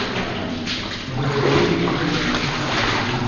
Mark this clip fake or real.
real